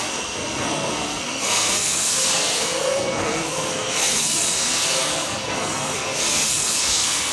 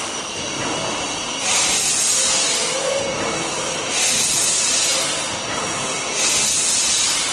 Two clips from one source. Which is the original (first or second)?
second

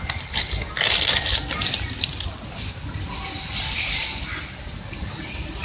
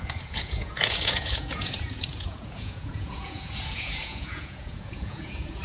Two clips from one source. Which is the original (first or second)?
first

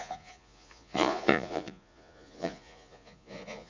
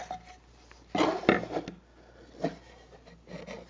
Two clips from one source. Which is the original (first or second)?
second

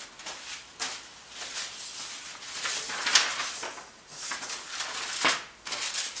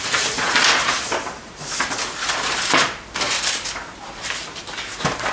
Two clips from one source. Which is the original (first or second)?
first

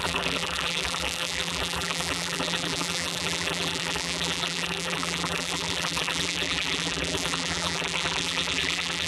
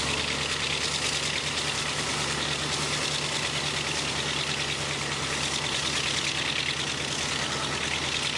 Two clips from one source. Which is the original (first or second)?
second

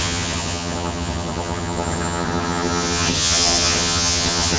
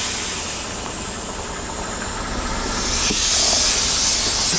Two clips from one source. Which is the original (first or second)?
second